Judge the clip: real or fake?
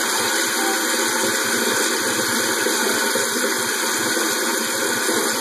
real